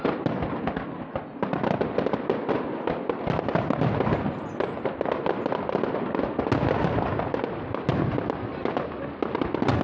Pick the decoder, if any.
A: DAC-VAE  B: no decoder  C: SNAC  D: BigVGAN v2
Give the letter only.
B